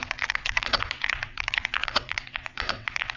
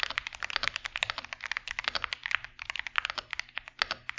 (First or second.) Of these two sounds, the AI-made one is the first